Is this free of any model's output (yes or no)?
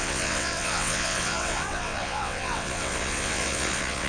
no